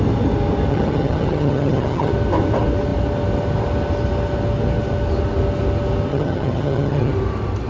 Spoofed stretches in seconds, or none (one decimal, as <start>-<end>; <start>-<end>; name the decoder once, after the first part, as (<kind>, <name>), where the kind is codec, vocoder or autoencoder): 0.7-2.1 (vocoder, HiFi-GAN); 6.1-7.1